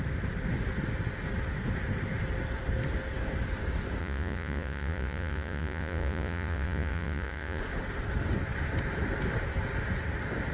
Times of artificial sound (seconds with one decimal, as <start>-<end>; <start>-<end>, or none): 4.0-7.6